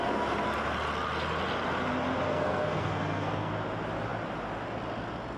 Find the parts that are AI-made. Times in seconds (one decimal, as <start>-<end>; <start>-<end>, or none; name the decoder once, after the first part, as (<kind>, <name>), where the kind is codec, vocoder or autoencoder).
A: 2.3-3.5 (codec, SNAC)